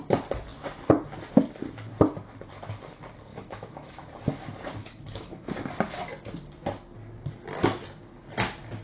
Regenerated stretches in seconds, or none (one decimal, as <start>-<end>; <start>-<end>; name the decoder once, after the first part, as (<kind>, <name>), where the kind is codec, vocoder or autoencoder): 3.3-4.1 (autoencoder, DAC-VAE); 4.8-5.5